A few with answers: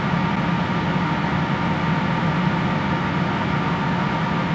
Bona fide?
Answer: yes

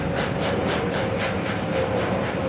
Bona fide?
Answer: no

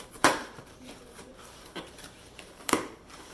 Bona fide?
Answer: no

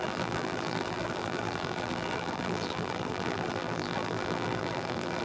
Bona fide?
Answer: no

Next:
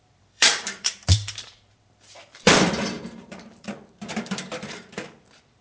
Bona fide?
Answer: no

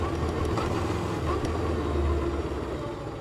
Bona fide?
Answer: yes